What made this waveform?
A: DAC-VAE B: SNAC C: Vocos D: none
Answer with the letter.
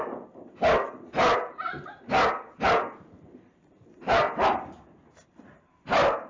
D